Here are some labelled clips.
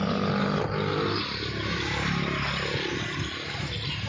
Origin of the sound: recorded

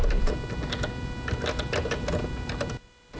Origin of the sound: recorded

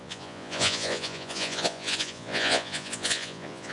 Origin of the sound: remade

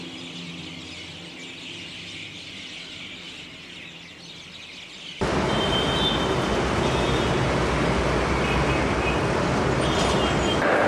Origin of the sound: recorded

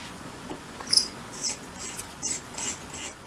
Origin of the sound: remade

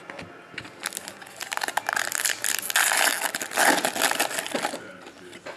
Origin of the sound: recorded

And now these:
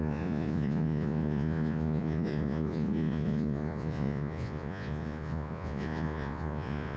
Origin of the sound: remade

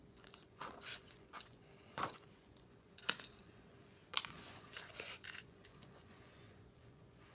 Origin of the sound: remade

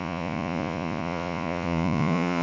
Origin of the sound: remade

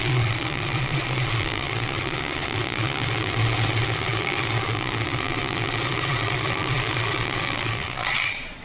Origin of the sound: remade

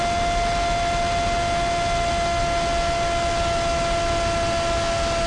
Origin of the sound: recorded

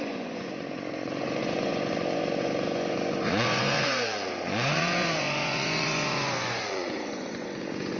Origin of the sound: remade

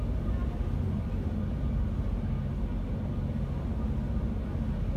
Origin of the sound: recorded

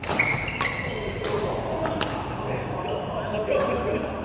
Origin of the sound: recorded